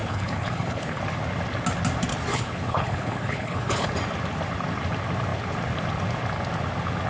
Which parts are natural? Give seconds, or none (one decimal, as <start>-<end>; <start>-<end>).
1.0-2.3; 3.9-7.1